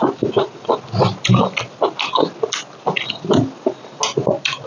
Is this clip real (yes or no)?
yes